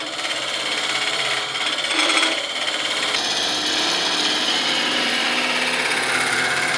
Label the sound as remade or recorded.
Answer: remade